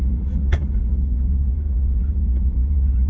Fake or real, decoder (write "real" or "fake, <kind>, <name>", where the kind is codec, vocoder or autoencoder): fake, vocoder, Vocos